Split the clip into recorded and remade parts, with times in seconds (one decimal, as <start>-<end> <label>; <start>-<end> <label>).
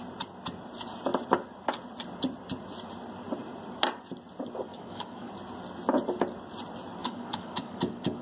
0.0-4.7 recorded; 4.7-5.3 remade; 5.3-7.0 recorded; 7.0-8.2 remade